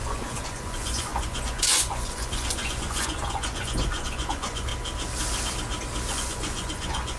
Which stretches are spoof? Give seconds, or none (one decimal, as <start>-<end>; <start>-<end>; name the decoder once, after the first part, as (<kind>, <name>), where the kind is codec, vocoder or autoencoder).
0.0-4.7 (vocoder, Vocos); 6.1-7.2